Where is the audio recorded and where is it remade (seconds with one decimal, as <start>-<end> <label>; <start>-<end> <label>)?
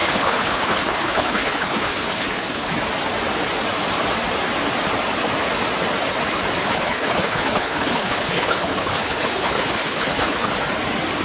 0.0-2.7 remade; 2.7-6.6 recorded; 6.6-10.5 remade; 10.5-11.2 recorded